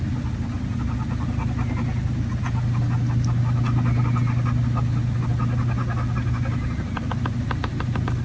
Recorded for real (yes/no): yes